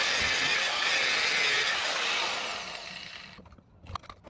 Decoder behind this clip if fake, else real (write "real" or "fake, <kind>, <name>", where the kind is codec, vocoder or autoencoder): real